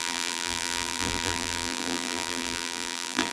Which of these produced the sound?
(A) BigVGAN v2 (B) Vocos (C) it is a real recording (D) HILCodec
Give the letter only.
A